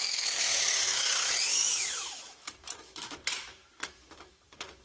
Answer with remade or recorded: remade